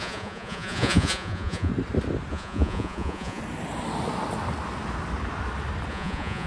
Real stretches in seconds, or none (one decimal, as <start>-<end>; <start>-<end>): 1.7-2.3; 3.4-5.9

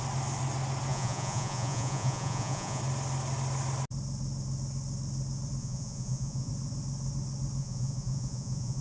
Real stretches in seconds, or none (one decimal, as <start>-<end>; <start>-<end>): 0.0-0.9; 2.8-5.6; 6.5-7.6

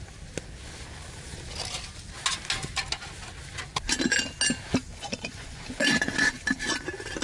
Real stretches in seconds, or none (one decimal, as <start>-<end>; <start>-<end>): 0.0-4.9; 6.3-7.2